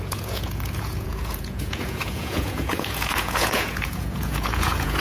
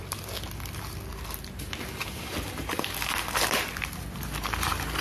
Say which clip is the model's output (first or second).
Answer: first